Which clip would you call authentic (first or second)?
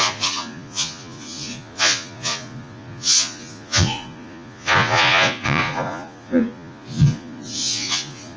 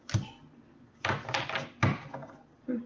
second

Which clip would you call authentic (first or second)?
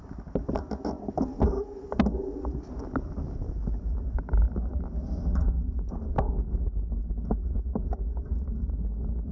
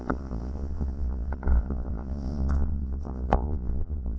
first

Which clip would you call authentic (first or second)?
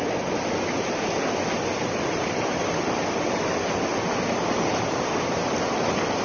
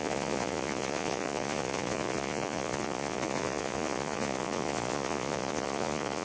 first